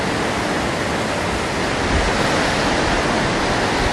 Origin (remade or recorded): recorded